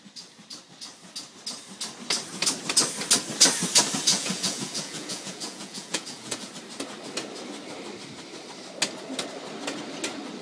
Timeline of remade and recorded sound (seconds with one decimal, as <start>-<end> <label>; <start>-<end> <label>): 0.0-4.1 recorded; 4.1-6.5 remade; 6.5-10.4 recorded